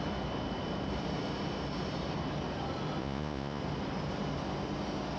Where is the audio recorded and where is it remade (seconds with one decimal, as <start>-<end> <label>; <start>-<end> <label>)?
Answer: 0.0-3.0 recorded; 3.0-3.6 remade; 3.6-5.2 recorded